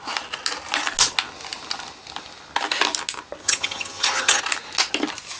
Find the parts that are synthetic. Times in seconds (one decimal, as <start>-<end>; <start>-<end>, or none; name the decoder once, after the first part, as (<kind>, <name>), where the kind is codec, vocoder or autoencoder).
3.4-4.4 (vocoder, HiFi-GAN)